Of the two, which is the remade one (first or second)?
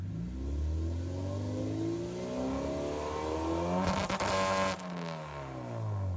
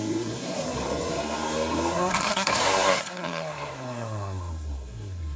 second